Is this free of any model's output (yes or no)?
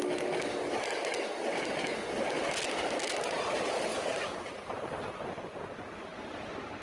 yes